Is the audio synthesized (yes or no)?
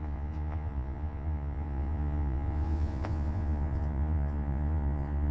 yes